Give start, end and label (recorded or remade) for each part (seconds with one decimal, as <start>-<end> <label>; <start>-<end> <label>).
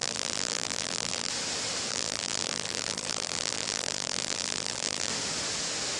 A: 0.0-1.3 remade; 1.3-1.9 recorded; 1.9-5.1 remade; 5.1-6.0 recorded